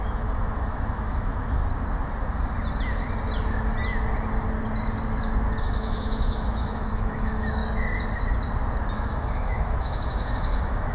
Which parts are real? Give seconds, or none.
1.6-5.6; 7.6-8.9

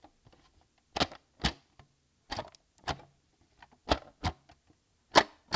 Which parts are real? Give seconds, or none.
0.0-5.6

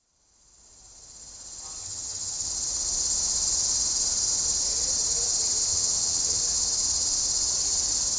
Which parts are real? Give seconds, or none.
0.0-1.8; 2.5-5.7; 6.4-8.2

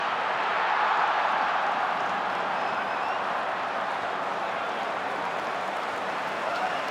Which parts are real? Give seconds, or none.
0.5-4.4

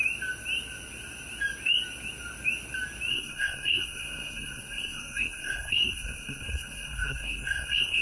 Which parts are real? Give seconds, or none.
0.0-3.1